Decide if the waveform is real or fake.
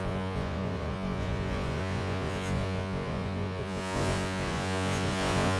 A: fake